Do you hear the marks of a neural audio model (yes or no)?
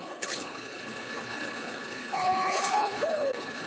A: yes